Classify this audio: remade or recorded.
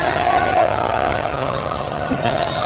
remade